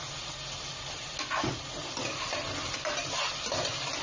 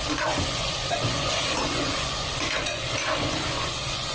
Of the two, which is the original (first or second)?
first